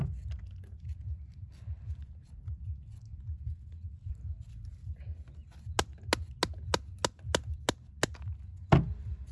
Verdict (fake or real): real